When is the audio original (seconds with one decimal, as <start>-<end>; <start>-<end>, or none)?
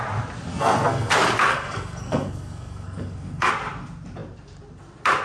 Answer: 0.0-0.5; 1.1-1.5; 3.5-5.2